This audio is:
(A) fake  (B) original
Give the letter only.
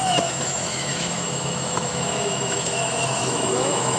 A